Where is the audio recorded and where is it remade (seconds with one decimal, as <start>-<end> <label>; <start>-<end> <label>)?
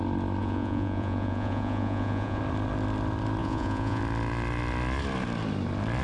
0.0-0.4 recorded; 0.4-2.4 remade; 2.4-3.4 recorded; 3.4-4.0 remade; 4.0-6.0 recorded